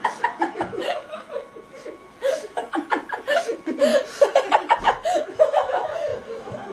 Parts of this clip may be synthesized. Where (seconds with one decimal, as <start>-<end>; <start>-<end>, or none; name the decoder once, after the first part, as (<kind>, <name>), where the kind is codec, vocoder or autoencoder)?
0.0-2.6 (autoencoder, DAC-VAE); 3.3-3.9; 4.8-6.7

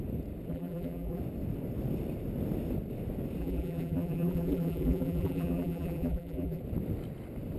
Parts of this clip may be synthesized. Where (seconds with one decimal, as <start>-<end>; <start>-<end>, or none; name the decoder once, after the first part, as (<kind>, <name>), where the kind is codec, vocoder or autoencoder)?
0.5-1.2 (vocoder, BigVGAN v2); 3.4-6.6

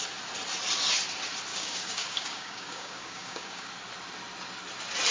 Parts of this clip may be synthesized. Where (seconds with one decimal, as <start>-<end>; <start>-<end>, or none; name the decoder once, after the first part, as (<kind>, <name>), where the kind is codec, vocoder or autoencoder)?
1.5-3.7 (codec, DAC)